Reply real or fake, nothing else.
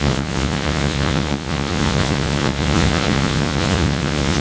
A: fake